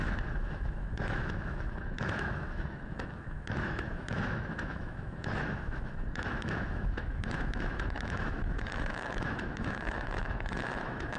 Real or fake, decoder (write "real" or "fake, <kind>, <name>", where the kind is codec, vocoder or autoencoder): fake, autoencoder, DAC-VAE